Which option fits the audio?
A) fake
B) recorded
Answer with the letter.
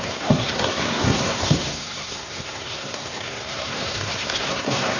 A